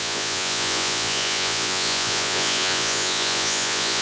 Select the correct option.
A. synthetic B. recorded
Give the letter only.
A